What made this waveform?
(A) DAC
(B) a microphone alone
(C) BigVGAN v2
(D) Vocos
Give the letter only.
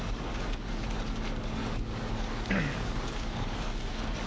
A